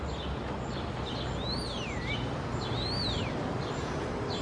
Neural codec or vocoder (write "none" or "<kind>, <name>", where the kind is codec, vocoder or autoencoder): none